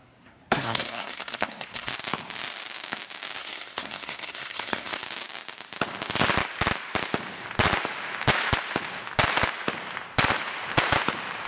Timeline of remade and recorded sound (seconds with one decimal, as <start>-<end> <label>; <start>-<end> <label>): 0.0-1.9 remade; 1.9-3.4 recorded; 3.4-5.0 remade; 5.0-11.5 recorded